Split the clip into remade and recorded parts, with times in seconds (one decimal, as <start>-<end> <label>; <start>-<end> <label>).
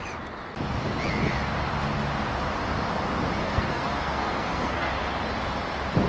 0.0-3.4 recorded; 3.4-4.9 remade; 4.9-6.1 recorded